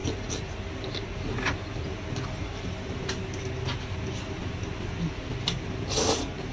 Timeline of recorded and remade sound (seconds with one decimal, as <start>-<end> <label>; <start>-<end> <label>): 0.0-0.5 remade; 0.5-6.5 recorded

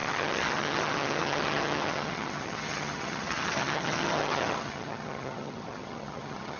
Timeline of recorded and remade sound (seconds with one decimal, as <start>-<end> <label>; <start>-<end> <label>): 0.0-6.6 remade

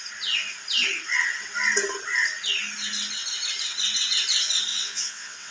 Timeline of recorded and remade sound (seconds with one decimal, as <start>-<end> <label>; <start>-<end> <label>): 0.0-4.7 recorded; 4.7-5.5 remade